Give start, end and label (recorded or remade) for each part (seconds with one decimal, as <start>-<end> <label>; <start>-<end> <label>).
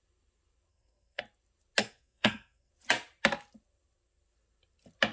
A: 0.0-0.7 recorded; 0.7-1.2 remade; 1.2-1.8 recorded; 1.8-2.7 remade; 2.7-5.1 recorded